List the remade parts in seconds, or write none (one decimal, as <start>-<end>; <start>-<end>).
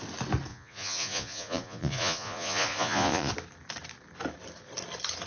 0.5-3.3